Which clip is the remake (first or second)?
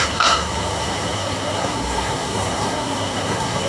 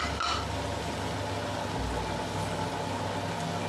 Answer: first